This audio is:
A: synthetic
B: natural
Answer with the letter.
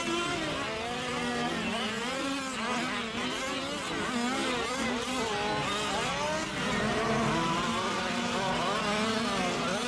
B